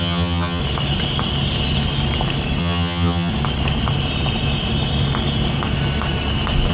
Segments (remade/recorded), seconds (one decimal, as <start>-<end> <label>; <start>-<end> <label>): 0.0-0.6 remade; 0.6-2.6 recorded; 2.6-3.3 remade; 3.3-6.7 recorded